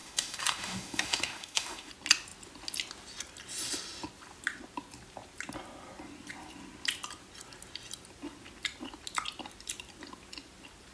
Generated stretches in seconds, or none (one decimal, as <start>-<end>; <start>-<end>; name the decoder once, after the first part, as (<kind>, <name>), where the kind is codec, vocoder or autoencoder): 0.0-1.9 (autoencoder, DAC-VAE)